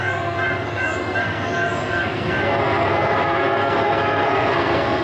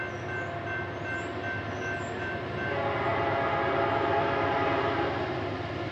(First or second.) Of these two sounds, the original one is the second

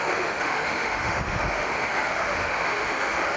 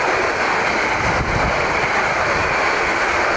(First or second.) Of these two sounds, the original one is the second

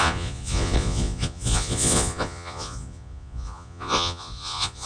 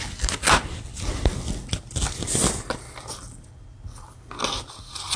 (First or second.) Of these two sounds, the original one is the second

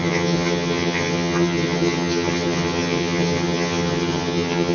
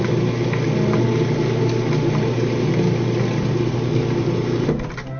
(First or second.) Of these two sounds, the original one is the second